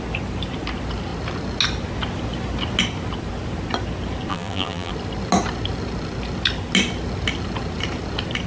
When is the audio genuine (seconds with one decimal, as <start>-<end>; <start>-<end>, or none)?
0.0-4.3; 4.9-8.5